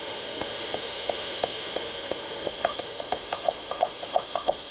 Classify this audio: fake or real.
fake